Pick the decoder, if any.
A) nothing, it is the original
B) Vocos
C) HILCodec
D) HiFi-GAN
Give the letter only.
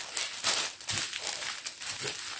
A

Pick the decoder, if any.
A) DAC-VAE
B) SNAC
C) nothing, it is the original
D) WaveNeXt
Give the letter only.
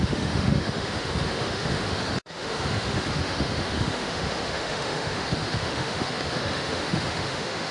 A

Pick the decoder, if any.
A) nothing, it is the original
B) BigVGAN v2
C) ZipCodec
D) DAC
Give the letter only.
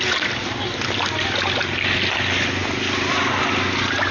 A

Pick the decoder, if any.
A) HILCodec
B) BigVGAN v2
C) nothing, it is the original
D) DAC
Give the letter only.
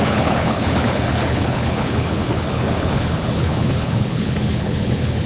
A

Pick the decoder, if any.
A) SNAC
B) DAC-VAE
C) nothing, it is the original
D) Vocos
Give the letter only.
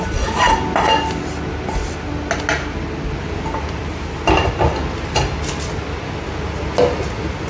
C